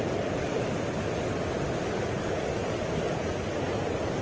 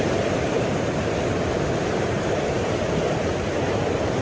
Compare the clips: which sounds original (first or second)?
first